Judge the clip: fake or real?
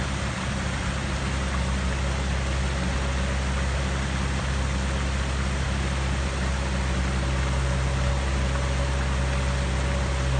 real